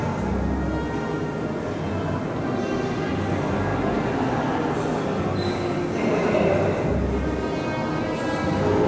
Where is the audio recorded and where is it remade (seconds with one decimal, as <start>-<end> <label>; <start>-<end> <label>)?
0.0-8.9 recorded